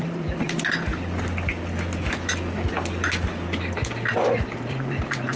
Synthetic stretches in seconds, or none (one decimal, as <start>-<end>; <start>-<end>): 0.0-0.9; 4.1-5.4